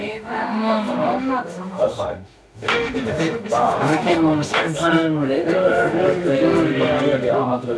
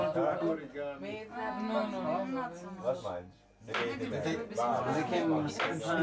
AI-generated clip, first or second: first